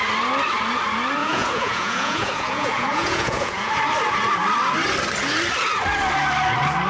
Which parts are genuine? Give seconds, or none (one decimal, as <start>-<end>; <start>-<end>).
0.0-1.2; 3.7-6.9